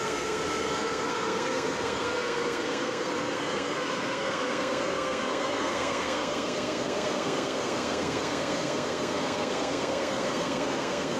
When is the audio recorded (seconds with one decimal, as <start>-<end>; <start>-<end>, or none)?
none